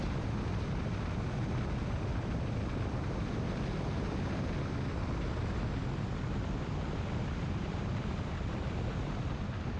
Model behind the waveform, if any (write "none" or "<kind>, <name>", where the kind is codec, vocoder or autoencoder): none